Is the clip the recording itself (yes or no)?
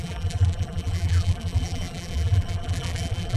no